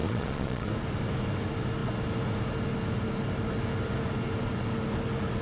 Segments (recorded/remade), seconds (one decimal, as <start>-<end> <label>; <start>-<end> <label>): 0.0-0.7 remade; 0.7-5.4 recorded